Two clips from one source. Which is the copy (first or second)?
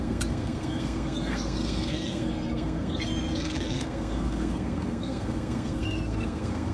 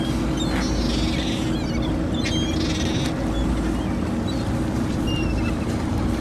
first